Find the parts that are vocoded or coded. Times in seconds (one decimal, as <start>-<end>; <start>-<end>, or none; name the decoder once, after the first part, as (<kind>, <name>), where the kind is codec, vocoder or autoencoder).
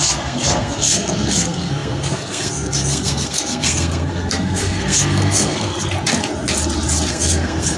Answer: 0.0-5.7 (codec, SNAC); 7.1-7.8